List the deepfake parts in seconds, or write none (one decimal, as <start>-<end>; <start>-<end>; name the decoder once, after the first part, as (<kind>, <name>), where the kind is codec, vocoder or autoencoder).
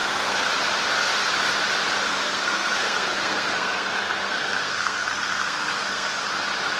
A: 0.0-0.5 (codec, SNAC); 2.1-6.2